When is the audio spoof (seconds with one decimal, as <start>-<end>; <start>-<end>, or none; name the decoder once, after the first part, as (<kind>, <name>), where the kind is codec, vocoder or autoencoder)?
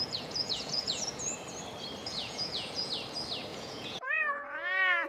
0.0-1.3 (vocoder, Vocos); 2.0-2.9; 3.5-5.1